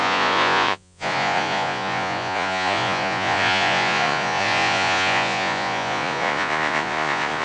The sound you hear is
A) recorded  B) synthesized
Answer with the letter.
B